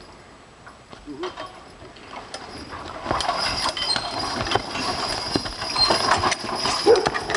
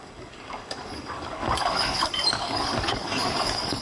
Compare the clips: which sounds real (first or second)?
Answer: first